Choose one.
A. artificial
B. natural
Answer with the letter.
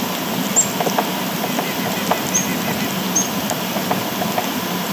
B